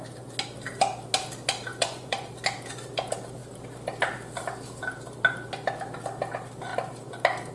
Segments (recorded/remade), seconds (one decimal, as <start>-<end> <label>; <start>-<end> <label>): 0.0-1.7 recorded; 1.7-2.3 remade; 2.3-7.5 recorded